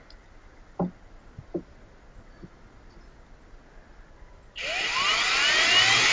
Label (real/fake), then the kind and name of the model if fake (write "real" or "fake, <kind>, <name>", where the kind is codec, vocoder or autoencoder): real